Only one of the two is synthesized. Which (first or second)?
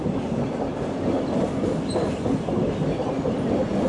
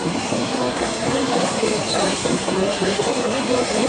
second